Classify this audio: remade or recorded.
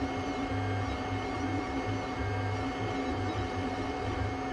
recorded